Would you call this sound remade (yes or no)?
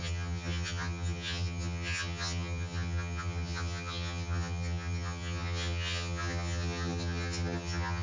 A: yes